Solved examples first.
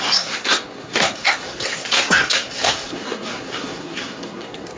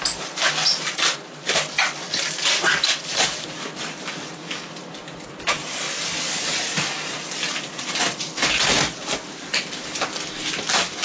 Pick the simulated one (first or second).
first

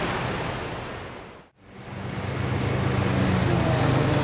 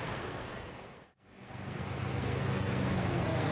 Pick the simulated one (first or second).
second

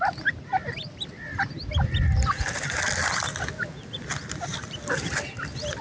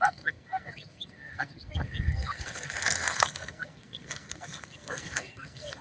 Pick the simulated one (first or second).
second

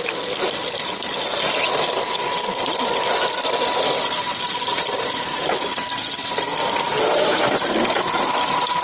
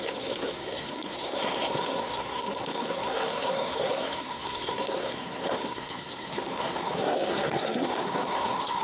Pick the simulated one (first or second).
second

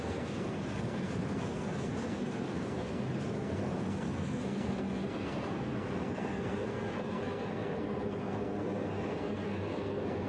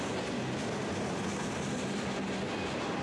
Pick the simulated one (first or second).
first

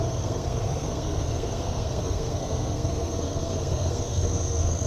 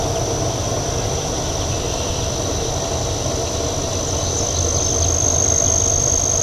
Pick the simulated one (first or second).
first